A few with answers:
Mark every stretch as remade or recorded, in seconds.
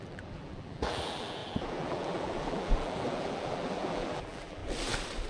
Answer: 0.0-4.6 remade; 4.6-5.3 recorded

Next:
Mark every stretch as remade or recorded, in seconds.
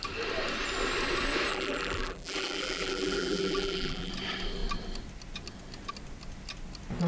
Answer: 0.0-1.5 recorded; 1.5-4.1 remade; 4.1-7.1 recorded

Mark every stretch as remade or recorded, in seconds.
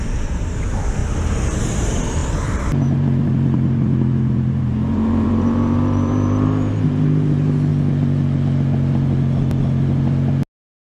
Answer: 0.0-1.0 remade; 1.0-1.6 recorded; 1.6-7.7 remade; 7.7-10.8 recorded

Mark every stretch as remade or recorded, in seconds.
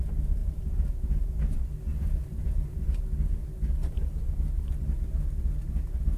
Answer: 0.0-0.4 recorded; 0.4-1.4 remade; 1.4-1.9 recorded; 1.9-2.8 remade; 2.8-3.8 recorded; 3.8-4.3 remade; 4.3-6.2 recorded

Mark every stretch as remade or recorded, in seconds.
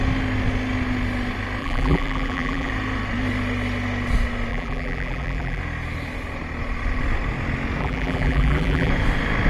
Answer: 0.0-1.6 recorded; 1.6-2.7 remade; 2.7-4.5 recorded; 4.5-5.6 remade; 5.6-7.8 recorded; 7.8-8.9 remade; 8.9-9.5 recorded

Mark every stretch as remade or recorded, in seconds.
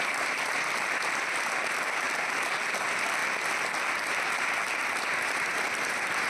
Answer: 0.0-3.2 remade; 3.2-5.6 recorded; 5.6-6.3 remade